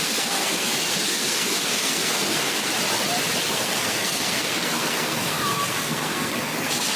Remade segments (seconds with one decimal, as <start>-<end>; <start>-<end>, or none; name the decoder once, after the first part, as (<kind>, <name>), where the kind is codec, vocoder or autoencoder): 0.0-2.7 (codec, SNAC); 3.4-7.0